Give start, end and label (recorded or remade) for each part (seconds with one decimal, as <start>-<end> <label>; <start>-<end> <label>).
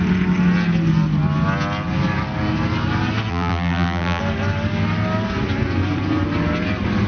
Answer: 0.0-3.3 recorded; 3.3-4.2 remade; 4.2-7.1 recorded